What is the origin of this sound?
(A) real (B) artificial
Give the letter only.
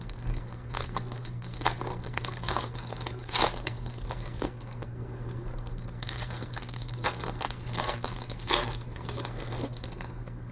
B